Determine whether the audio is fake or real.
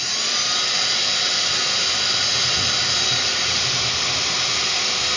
real